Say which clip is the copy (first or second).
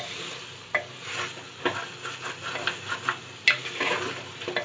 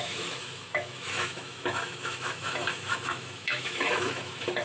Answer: second